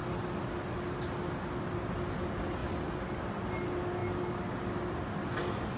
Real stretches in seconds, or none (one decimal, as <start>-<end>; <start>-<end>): 0.0-5.8

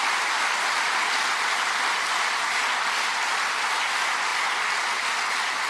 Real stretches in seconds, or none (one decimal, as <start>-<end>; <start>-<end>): 0.0-5.7